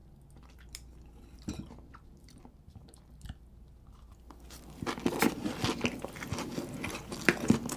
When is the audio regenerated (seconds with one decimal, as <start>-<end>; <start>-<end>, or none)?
none